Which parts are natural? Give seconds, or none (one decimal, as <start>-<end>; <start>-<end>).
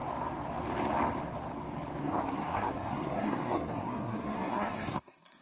0.0-2.0